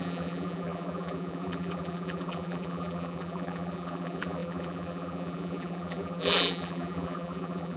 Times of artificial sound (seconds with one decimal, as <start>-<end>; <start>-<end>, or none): 0.0-7.8